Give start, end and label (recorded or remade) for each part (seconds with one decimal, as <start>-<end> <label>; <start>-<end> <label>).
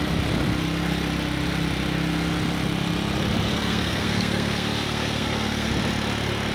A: 0.0-3.5 recorded; 3.5-5.7 remade; 5.7-6.5 recorded